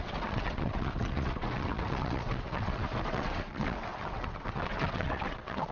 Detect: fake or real fake